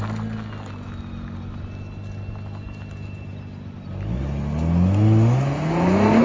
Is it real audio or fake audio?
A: real